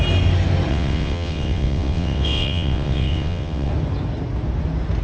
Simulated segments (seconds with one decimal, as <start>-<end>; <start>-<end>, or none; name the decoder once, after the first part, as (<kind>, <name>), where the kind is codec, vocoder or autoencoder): 0.7-3.7 (vocoder, WaveNeXt)